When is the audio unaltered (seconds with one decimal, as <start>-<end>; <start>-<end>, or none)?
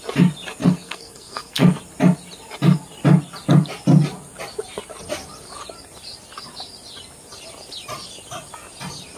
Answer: 0.0-0.6; 1.8-9.2